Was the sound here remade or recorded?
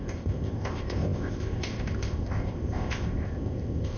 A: remade